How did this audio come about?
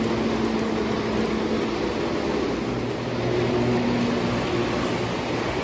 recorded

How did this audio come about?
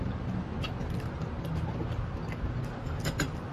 recorded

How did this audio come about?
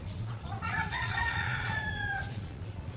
remade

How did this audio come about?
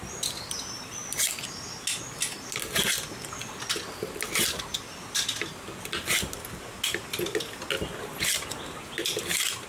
recorded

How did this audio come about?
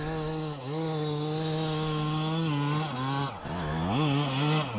recorded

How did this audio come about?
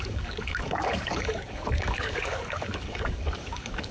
remade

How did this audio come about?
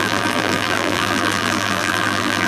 remade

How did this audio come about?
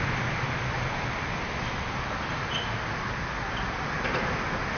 recorded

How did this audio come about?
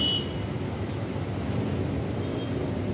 recorded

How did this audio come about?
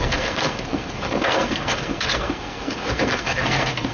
remade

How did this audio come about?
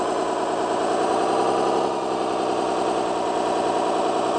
recorded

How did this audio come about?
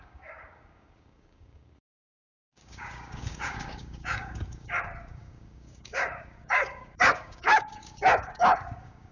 remade